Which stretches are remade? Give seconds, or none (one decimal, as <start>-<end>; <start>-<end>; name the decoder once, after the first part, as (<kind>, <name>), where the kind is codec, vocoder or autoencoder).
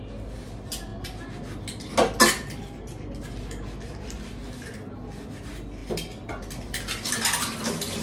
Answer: 5.8-6.4 (vocoder, BigVGAN v2)